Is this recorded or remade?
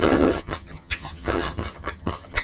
remade